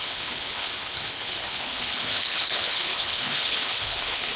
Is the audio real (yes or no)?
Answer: no